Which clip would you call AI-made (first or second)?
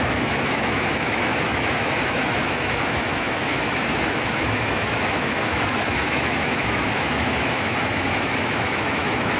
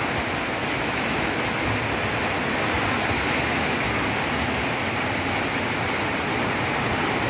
first